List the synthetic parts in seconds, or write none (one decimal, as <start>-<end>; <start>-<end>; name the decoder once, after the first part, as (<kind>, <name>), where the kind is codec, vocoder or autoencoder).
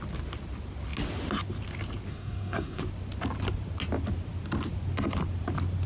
2.1-2.8 (codec, SNAC)